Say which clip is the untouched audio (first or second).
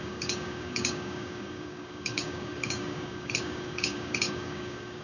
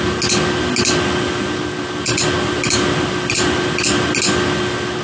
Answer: second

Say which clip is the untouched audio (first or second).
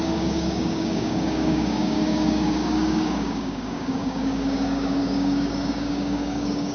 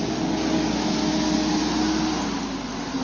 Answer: second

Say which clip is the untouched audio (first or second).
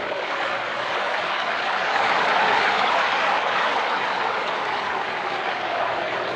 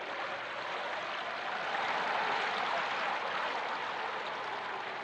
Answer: second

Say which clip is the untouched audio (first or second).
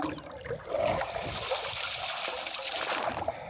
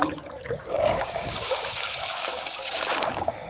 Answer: first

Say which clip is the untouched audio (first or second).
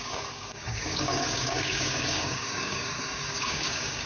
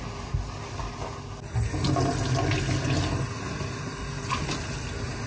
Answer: second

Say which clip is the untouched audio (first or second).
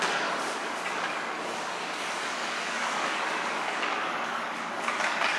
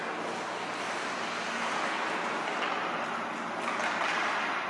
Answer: second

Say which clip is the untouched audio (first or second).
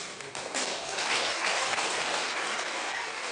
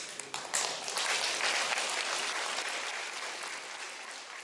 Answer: second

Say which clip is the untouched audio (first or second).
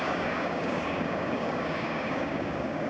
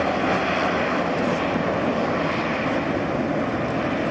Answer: second